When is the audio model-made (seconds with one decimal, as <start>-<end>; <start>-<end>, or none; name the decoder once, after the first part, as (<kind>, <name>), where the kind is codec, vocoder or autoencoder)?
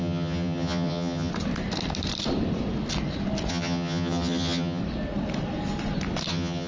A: 0.0-1.3 (vocoder, HiFi-GAN); 3.5-4.8; 6.3-6.7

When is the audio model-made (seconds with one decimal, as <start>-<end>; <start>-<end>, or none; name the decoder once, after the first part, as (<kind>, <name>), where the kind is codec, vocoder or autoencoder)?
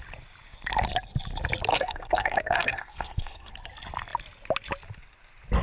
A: 1.7-3.5 (codec, SNAC)